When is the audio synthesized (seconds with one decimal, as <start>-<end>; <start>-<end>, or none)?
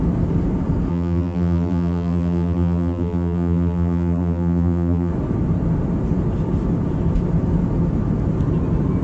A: 0.9-5.1